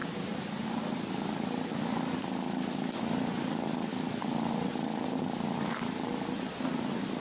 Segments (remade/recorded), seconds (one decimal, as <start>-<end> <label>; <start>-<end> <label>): 0.0-0.8 remade; 0.8-3.9 recorded; 3.9-4.5 remade; 4.5-7.2 recorded